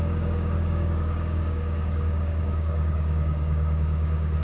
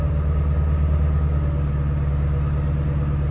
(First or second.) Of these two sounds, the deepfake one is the first